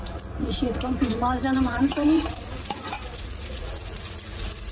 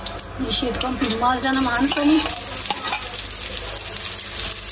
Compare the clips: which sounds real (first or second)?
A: second